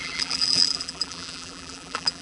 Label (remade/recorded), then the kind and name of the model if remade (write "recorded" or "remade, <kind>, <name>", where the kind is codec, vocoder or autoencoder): remade, vocoder, BigVGAN v2